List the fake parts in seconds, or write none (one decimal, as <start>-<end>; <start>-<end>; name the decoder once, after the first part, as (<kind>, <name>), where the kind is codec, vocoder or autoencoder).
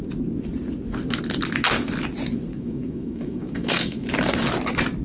2.5-4.1 (autoencoder, DAC-VAE)